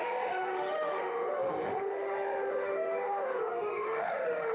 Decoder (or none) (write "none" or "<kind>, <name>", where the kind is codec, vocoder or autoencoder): autoencoder, DAC-VAE